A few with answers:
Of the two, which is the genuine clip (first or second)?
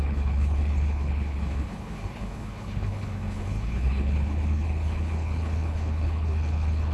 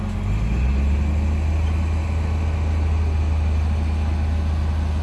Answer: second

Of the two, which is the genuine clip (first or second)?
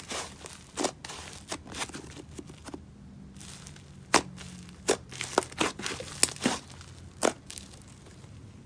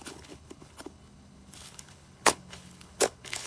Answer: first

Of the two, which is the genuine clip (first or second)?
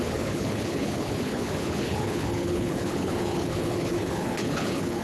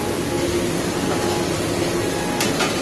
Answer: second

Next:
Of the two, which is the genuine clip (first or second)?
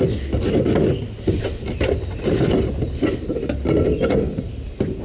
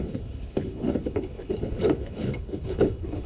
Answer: first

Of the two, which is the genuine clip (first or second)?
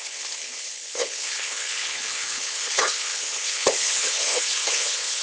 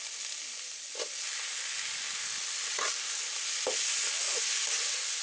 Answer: second